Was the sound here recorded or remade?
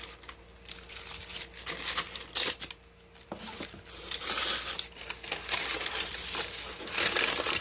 recorded